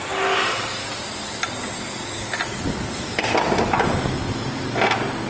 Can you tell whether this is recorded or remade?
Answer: recorded